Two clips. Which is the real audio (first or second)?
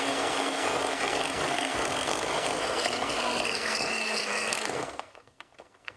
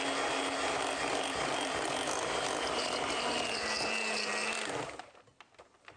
second